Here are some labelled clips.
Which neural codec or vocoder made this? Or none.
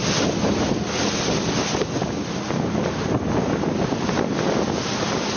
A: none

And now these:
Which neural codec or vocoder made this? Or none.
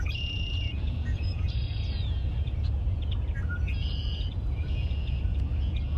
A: vocoder, Vocos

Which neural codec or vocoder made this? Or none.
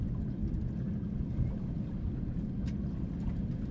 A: none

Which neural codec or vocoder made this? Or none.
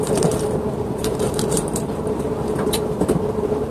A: vocoder, BigVGAN v2